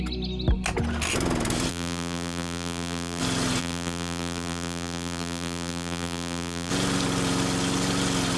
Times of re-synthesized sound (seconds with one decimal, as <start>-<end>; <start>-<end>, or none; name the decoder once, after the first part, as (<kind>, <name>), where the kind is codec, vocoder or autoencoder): 1.7-3.2 (vocoder, BigVGAN v2); 3.6-6.7

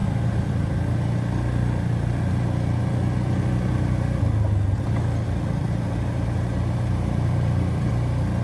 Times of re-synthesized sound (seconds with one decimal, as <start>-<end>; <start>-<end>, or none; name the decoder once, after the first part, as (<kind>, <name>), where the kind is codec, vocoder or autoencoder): 0.0-0.7 (vocoder, BigVGAN v2); 5.6-7.9

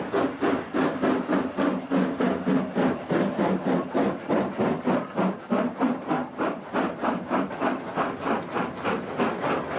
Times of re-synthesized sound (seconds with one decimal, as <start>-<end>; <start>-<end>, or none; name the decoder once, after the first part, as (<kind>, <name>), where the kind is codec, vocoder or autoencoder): 6.2-9.0 (vocoder, BigVGAN v2)

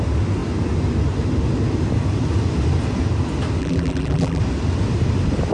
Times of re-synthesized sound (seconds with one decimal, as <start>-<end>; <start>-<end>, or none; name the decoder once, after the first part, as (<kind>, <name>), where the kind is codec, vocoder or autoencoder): 3.6-4.4 (vocoder, BigVGAN v2)

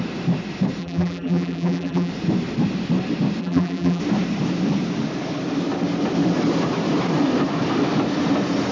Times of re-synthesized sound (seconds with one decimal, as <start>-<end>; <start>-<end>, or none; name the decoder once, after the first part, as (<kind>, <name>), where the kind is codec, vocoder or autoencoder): 0.8-2.1 (vocoder, BigVGAN v2); 3.4-4.0

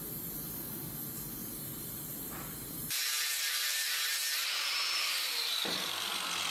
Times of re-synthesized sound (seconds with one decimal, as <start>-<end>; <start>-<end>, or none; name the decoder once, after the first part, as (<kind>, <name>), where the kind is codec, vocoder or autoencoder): 1.4-4.0 (vocoder, BigVGAN v2); 4.4-5.9

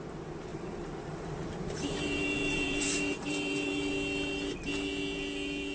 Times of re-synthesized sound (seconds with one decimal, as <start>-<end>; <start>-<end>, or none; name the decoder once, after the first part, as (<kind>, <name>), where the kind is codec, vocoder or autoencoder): 0.5-3.9 (vocoder, BigVGAN v2)

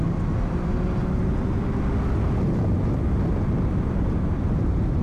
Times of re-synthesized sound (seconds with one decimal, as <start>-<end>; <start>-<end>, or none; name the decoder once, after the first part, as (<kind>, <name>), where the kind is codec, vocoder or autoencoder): 0.0-1.0 (vocoder, BigVGAN v2); 3.7-5.0